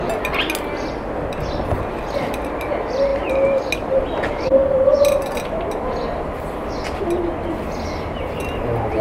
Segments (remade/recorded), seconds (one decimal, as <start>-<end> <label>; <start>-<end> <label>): 0.0-9.0 recorded